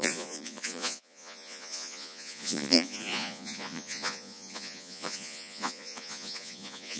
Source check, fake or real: fake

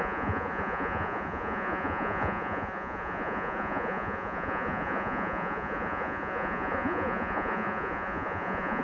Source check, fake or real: fake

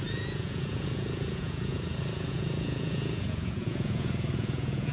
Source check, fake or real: fake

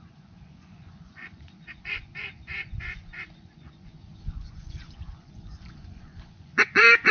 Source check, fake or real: fake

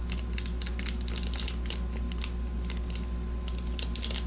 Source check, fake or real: real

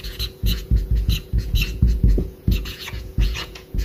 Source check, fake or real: fake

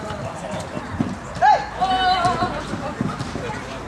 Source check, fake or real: real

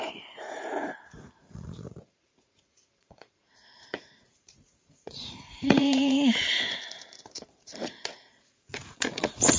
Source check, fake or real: fake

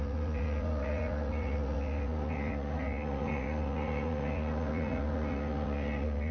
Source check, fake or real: fake